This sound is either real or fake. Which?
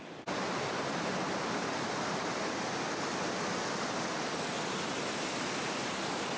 real